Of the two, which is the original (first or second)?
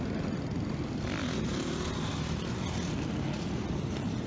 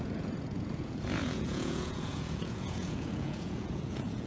first